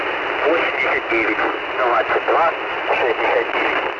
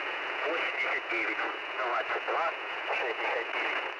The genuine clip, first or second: first